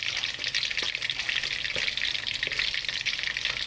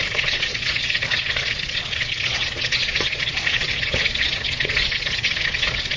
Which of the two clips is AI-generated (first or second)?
second